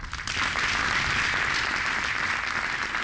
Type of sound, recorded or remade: recorded